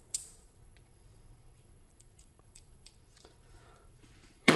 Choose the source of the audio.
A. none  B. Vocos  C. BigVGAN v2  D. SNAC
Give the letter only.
B